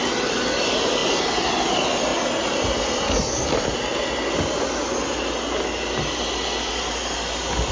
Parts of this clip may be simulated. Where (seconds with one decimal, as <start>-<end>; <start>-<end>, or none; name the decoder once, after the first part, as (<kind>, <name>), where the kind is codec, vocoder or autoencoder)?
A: none